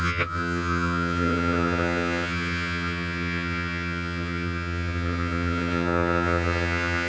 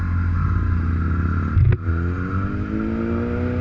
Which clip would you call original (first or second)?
second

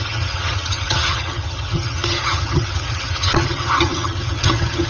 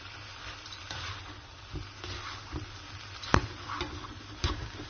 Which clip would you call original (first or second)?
second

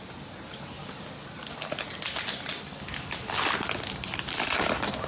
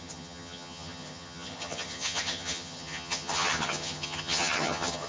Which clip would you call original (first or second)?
first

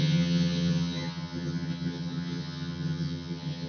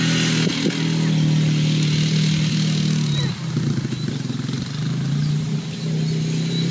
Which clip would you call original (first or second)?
second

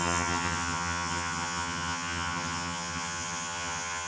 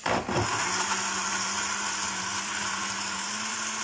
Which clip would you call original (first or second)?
second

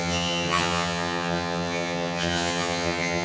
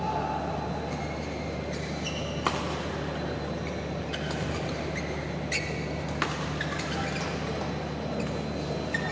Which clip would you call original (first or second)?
second